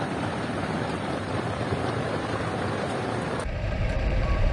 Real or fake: fake